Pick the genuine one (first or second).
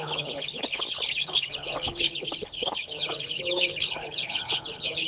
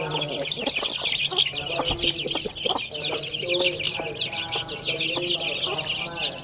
second